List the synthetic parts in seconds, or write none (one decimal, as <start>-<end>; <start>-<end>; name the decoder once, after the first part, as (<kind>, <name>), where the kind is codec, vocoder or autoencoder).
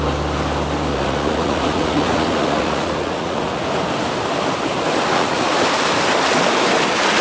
0.9-3.6 (vocoder, Vocos); 5.1-5.6